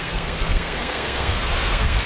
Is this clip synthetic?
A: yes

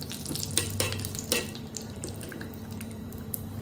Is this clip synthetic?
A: yes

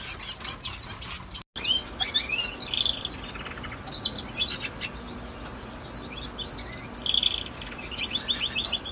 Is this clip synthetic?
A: no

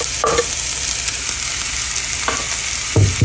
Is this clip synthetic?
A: no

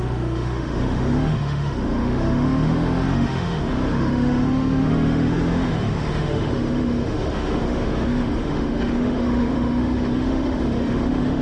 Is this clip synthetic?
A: yes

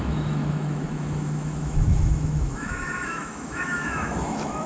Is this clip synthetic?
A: yes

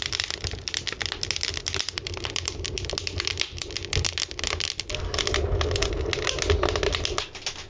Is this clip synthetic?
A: no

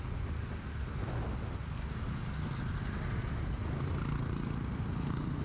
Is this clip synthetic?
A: no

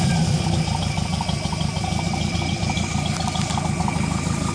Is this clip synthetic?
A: no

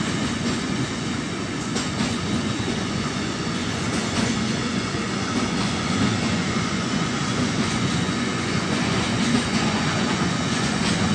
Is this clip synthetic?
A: yes